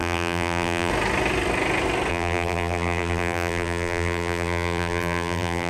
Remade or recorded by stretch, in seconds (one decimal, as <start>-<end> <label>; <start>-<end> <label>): 0.0-0.9 remade; 0.9-2.1 recorded; 2.1-5.7 remade